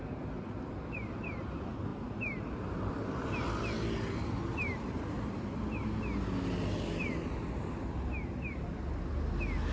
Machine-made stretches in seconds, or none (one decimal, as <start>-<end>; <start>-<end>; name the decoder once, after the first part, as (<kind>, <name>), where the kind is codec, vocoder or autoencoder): none